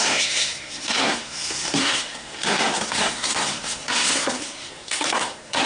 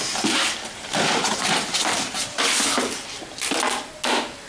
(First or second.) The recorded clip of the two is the second